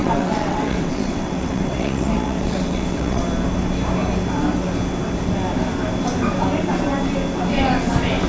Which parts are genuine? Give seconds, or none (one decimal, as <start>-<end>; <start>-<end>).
3.2-8.3